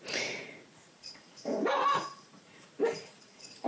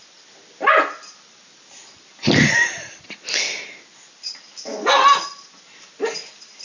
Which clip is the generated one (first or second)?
first